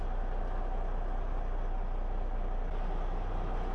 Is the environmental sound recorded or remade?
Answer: recorded